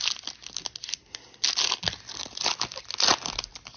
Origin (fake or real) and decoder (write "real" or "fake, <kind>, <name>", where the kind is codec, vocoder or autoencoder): real